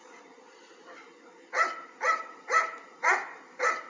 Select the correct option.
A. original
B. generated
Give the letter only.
B